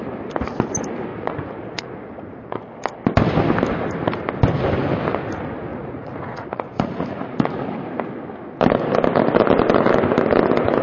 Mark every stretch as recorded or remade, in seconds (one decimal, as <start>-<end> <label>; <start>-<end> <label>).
0.0-1.1 recorded; 1.1-2.6 remade; 2.6-5.7 recorded; 5.7-7.5 remade; 7.5-10.8 recorded